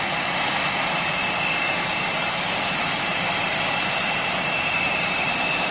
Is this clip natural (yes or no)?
no